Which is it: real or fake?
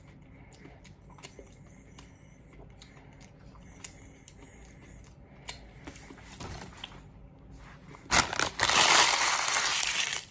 real